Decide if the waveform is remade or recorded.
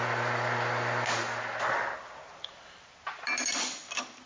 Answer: recorded